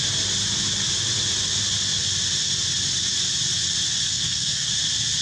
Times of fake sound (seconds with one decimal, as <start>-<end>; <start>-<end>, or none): 4.1-4.7